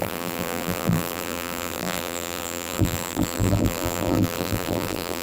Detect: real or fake fake